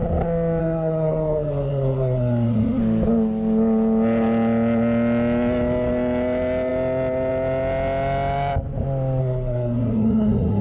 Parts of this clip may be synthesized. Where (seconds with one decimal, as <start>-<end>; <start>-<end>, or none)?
0.6-2.8; 9.2-10.6